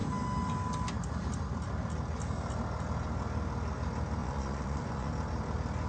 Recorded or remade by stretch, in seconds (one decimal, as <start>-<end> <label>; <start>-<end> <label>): 0.0-4.2 recorded; 4.2-5.1 remade; 5.1-5.9 recorded